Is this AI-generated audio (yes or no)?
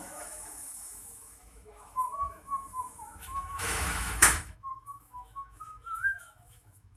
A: yes